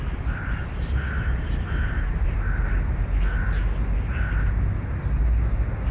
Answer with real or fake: real